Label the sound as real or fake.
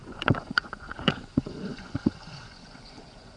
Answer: fake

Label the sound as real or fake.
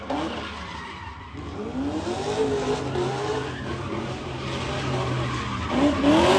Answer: real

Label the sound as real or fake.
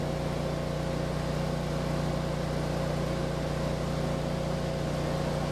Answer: real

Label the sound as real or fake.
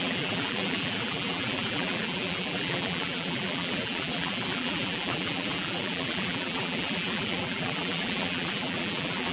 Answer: fake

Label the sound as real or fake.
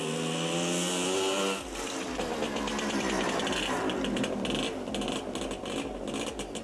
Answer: real